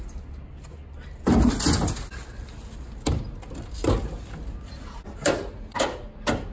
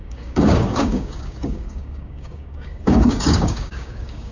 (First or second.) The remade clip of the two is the second